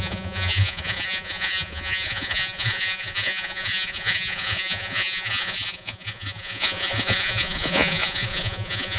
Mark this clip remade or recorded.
remade